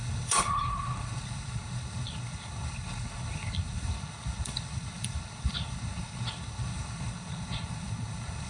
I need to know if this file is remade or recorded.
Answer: remade